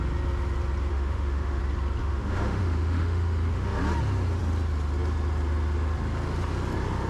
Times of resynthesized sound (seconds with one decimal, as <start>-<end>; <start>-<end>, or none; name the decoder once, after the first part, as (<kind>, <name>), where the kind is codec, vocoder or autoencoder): 0.9-1.6 (autoencoder, DAC-VAE); 2.0-3.8